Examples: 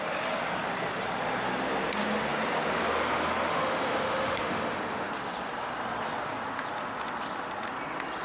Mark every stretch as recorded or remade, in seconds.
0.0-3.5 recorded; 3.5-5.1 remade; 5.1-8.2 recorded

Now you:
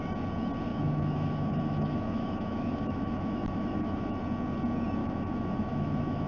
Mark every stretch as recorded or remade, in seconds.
0.0-0.7 recorded; 0.7-4.2 remade; 4.2-5.0 recorded; 5.0-6.3 remade

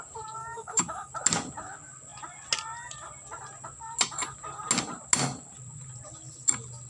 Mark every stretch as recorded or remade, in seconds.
0.0-0.4 recorded; 0.4-1.1 remade; 1.1-6.9 recorded

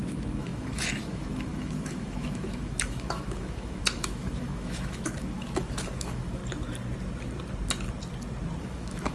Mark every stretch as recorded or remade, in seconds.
0.0-6.4 remade; 6.4-8.6 recorded; 8.6-9.1 remade

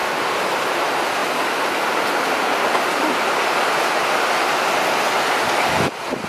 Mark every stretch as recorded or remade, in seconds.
0.0-6.3 recorded

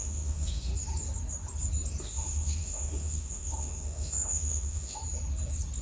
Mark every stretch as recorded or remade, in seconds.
0.0-0.7 remade; 0.7-2.0 recorded; 2.0-5.0 remade; 5.0-5.8 recorded